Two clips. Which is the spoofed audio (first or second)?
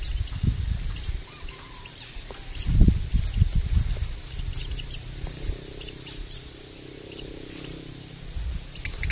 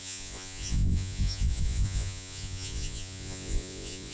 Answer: second